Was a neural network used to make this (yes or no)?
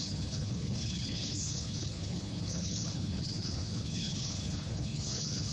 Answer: yes